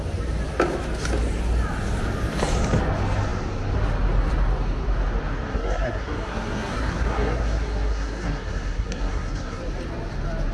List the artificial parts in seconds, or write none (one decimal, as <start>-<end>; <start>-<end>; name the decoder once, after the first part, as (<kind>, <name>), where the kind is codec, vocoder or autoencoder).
5.5-9.6 (codec, SNAC)